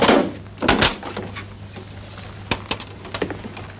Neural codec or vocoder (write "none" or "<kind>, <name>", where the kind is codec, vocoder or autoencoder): none